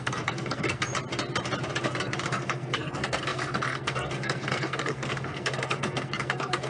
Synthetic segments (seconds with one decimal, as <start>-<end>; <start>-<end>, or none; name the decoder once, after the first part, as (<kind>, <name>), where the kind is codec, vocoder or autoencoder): 0.0-0.9 (codec, SNAC); 1.8-6.7